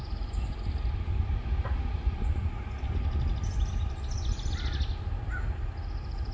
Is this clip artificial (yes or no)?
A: no